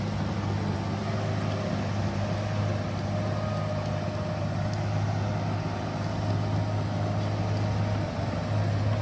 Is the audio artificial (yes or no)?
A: no